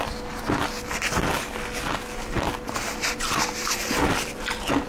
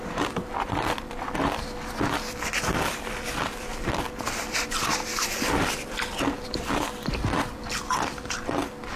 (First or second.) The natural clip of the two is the first